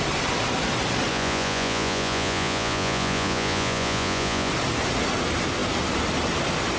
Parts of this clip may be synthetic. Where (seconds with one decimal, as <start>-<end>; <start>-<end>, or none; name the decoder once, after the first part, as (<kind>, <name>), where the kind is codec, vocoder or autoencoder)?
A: 1.1-4.5 (vocoder, Vocos)